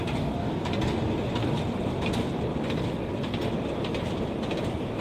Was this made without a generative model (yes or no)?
no